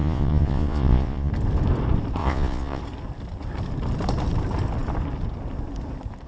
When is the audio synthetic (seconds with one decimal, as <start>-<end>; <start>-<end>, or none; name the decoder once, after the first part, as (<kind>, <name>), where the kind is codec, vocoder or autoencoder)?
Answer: 0.0-1.3 (vocoder, Vocos); 2.2-2.8

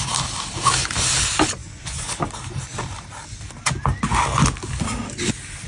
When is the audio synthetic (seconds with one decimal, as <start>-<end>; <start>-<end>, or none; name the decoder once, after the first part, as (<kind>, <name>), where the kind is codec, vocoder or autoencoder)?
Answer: 1.6-2.1 (vocoder, Vocos)

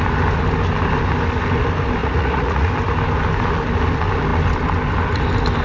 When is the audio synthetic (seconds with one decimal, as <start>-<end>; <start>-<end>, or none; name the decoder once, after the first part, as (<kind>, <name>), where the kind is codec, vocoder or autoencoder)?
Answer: 2.0-2.7 (vocoder, Vocos)

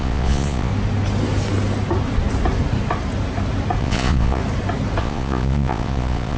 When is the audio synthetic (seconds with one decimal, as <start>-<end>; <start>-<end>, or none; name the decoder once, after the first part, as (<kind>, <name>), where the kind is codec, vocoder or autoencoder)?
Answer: 0.0-0.7 (vocoder, Vocos); 3.8-4.4; 5.0-6.4

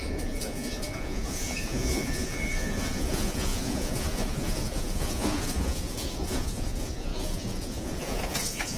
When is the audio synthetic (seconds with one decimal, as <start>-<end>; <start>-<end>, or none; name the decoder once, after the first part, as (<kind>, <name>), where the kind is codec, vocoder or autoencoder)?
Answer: 0.0-8.8 (vocoder, Vocos)

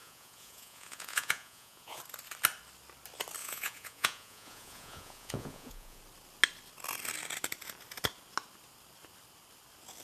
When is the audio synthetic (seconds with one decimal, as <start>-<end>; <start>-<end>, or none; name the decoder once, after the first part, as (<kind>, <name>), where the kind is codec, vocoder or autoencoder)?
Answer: 0.0-2.0 (vocoder, Vocos); 3.4-6.0

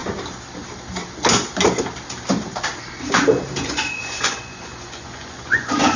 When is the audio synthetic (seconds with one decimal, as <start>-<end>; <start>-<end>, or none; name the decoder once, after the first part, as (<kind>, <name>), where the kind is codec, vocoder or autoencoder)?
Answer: 3.6-6.0 (vocoder, Vocos)